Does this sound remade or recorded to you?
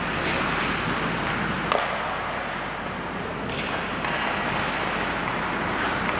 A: recorded